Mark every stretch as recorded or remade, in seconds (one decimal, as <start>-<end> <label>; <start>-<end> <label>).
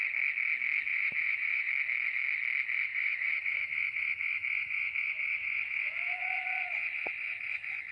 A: 0.0-0.9 recorded; 0.9-1.7 remade; 1.7-2.9 recorded; 2.9-7.9 remade